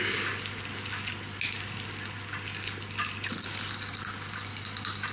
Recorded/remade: recorded